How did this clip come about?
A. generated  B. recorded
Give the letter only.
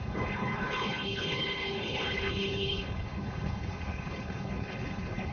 A